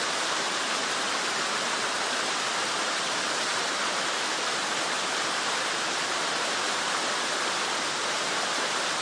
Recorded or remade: recorded